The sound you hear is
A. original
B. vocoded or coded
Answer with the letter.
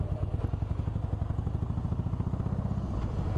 A